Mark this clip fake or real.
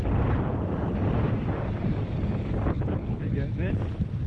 real